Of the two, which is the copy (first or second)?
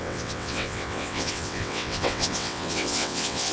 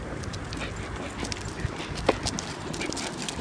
first